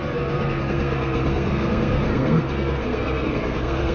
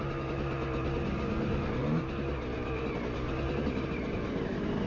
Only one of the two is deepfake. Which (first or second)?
first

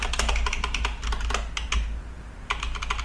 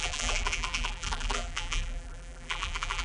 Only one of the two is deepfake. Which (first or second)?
second